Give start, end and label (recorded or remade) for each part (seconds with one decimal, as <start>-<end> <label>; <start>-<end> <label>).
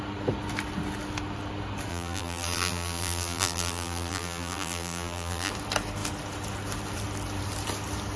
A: 0.0-1.9 recorded; 1.9-5.5 remade; 5.5-8.2 recorded